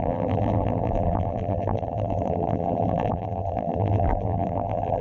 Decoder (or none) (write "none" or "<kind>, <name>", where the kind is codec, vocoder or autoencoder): vocoder, BigVGAN v2